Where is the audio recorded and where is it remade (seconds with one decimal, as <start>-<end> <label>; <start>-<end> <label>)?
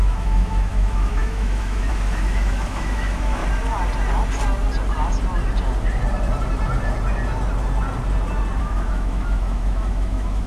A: 0.0-3.4 remade; 3.4-8.6 recorded; 8.6-10.5 remade